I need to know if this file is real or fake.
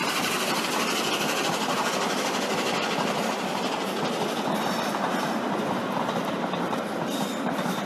real